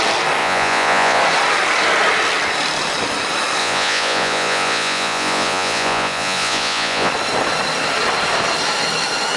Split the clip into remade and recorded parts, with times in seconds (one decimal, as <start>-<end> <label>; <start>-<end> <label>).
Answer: 0.0-0.4 recorded; 0.4-1.2 remade; 1.2-3.6 recorded; 3.6-7.1 remade; 7.1-9.4 recorded